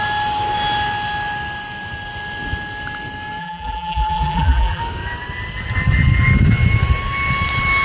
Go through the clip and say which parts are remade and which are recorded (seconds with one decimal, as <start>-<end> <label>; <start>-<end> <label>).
0.0-3.4 recorded; 3.4-4.8 remade; 4.8-7.8 recorded